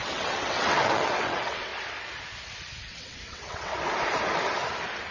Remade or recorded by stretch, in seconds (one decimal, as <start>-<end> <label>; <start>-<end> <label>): 0.0-1.7 remade; 1.7-2.8 recorded; 2.8-3.7 remade; 3.7-5.1 recorded